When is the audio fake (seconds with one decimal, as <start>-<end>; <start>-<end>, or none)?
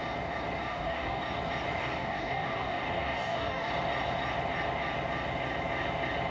0.7-1.2; 1.8-3.7